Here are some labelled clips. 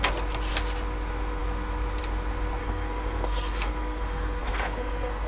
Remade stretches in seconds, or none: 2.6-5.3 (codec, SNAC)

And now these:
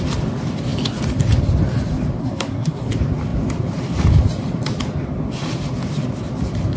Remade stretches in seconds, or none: 2.2-2.9 (codec, SNAC)

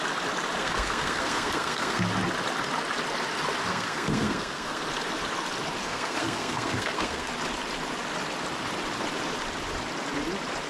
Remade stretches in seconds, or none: 0.6-2.0 (codec, SNAC); 3.7-4.8; 5.8-7.3

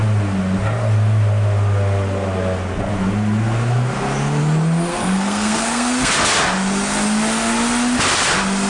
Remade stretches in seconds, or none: 4.9-6.1 (codec, SNAC)

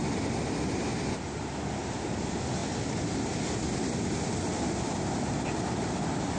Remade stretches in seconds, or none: none

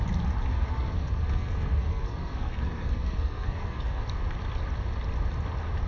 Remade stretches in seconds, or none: 0.5-4.0 (codec, SNAC)